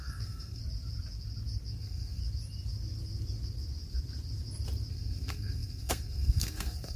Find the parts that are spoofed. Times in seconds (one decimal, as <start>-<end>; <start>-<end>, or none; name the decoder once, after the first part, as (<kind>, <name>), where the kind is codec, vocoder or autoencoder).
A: 0.0-0.6 (codec, SNAC); 1.8-2.2; 4.9-7.0